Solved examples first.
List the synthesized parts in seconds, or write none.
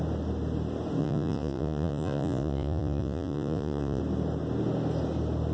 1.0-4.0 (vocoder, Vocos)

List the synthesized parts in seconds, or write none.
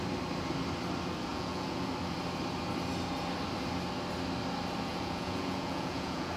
1.3-1.9 (vocoder, Vocos); 4.9-6.4